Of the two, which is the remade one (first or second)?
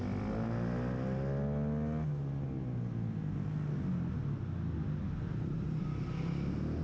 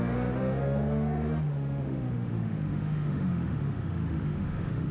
second